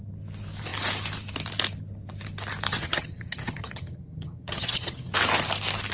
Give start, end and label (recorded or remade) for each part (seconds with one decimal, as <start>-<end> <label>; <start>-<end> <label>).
0.0-2.7 recorded; 2.7-5.1 remade; 5.1-5.9 recorded